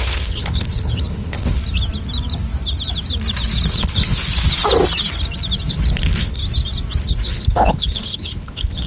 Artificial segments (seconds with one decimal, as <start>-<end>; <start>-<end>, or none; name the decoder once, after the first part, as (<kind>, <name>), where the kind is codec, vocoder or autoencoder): 0.0-1.6 (codec, HILCodec); 3.7-4.2; 5.7-6.4; 7.0-8.9